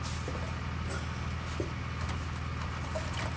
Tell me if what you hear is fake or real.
real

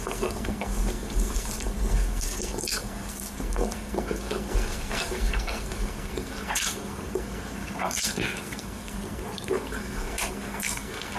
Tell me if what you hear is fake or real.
fake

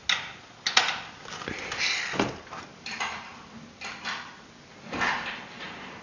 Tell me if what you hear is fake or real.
real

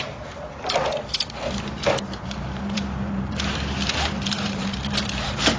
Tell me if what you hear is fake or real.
fake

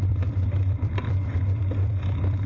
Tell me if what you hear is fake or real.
fake